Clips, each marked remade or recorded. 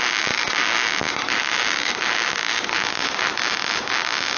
recorded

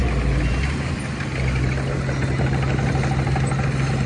recorded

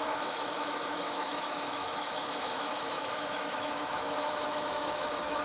remade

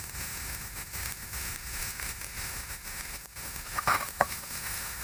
remade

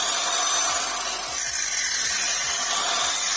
recorded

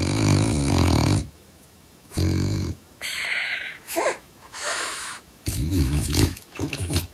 remade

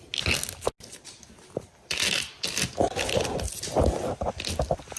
recorded